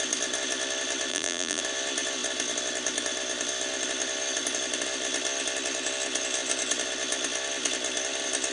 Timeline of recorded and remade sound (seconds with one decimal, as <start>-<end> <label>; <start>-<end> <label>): 0.0-1.1 recorded; 1.1-1.6 remade; 1.6-8.5 recorded